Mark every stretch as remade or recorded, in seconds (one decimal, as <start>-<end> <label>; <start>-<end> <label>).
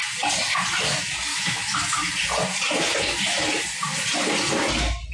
0.0-1.3 recorded; 1.3-2.1 remade; 2.1-5.1 recorded